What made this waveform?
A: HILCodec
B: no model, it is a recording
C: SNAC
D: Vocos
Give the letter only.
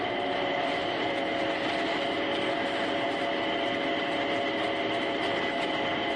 B